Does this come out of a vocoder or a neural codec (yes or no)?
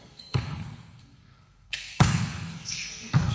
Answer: yes